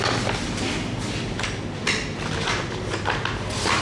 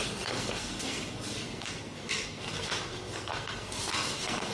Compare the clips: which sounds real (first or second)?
first